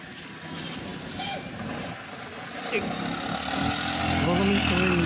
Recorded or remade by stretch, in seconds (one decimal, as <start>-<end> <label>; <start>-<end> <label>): 0.0-5.1 recorded